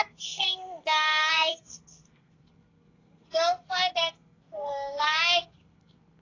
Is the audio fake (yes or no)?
yes